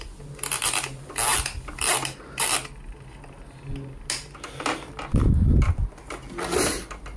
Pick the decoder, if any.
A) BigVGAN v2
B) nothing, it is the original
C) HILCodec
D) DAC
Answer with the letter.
B